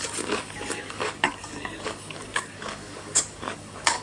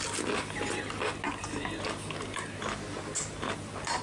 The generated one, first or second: first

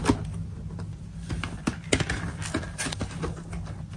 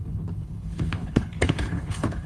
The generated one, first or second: second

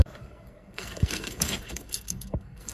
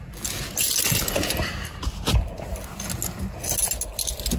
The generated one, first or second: first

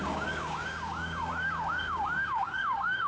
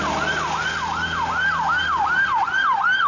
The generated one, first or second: first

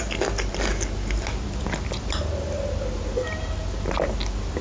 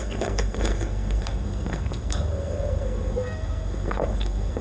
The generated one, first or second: second